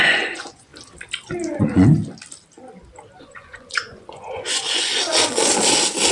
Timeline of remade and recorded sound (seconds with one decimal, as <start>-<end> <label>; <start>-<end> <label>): 0.0-0.7 remade; 0.7-1.6 recorded; 1.6-2.0 remade; 2.0-3.2 recorded; 3.2-4.9 remade; 4.9-6.1 recorded